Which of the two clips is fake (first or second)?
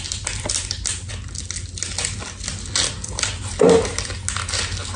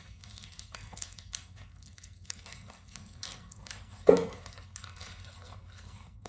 second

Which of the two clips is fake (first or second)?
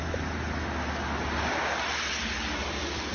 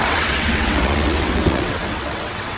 second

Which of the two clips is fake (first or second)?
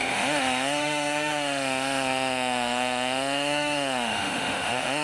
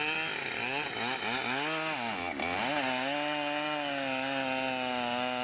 first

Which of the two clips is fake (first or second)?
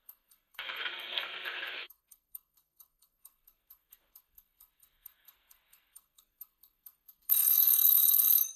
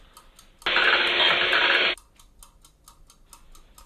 first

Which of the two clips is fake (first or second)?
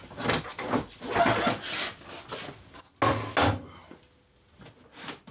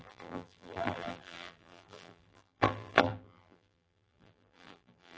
second